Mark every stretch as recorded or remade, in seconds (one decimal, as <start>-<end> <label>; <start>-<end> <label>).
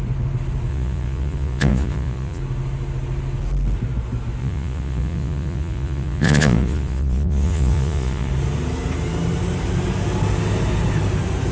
0.0-0.7 recorded; 0.7-2.4 remade; 2.4-4.4 recorded; 4.4-8.3 remade; 8.3-11.5 recorded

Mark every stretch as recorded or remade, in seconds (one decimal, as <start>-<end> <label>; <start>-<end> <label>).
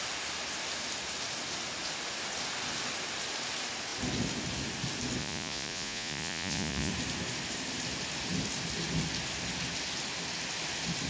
0.0-5.2 recorded; 5.2-6.9 remade; 6.9-11.1 recorded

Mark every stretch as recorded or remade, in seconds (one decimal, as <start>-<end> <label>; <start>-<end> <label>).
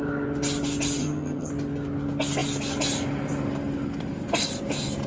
0.0-1.0 recorded; 1.0-1.5 remade; 1.5-5.1 recorded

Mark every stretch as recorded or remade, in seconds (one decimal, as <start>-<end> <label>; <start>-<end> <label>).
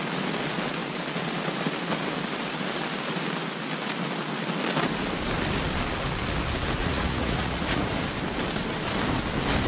0.0-6.8 recorded; 6.8-7.9 remade; 7.9-9.7 recorded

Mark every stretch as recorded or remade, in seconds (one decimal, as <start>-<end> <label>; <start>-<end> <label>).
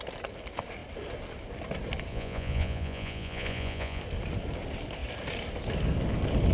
0.0-2.1 recorded; 2.1-4.0 remade; 4.0-6.5 recorded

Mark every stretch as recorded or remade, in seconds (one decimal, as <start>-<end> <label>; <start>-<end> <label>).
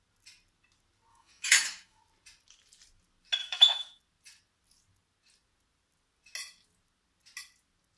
0.0-1.1 recorded; 1.1-2.0 remade; 2.0-3.4 recorded; 3.4-4.0 remade; 4.0-8.0 recorded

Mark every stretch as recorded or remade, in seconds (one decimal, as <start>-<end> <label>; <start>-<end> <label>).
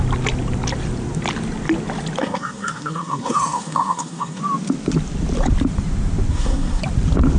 0.0-2.2 recorded; 2.2-4.4 remade; 4.4-6.3 recorded; 6.3-6.8 remade; 6.8-7.4 recorded